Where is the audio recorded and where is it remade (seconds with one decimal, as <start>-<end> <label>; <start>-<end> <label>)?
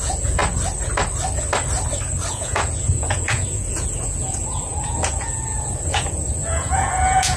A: 0.0-0.4 remade; 0.4-2.3 recorded; 2.3-7.4 remade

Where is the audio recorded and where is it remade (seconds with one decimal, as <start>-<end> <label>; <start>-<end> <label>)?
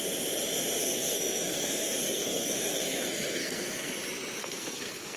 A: 0.0-0.8 recorded; 0.8-3.9 remade; 3.9-4.4 recorded; 4.4-5.2 remade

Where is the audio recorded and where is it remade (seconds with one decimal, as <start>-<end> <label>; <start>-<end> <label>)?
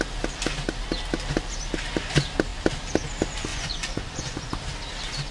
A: 0.0-3.5 recorded; 3.5-4.5 remade; 4.5-5.3 recorded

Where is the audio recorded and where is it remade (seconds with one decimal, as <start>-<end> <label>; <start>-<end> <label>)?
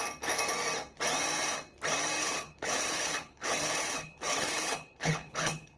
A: 0.0-2.2 recorded; 2.2-5.8 remade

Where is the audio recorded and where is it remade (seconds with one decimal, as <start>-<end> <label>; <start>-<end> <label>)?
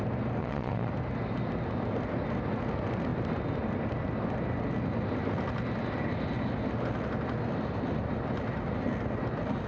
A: 0.0-0.4 recorded; 0.4-0.9 remade; 0.9-9.7 recorded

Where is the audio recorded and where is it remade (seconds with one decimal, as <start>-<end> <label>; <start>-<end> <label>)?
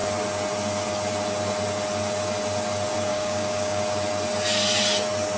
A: 0.0-3.1 recorded; 3.1-3.8 remade; 3.8-5.4 recorded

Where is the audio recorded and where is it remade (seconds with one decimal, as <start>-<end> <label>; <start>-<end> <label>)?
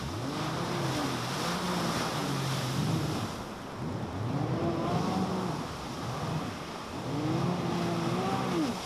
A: 0.0-8.9 recorded